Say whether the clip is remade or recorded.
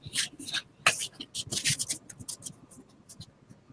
recorded